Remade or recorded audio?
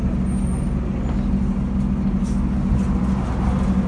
recorded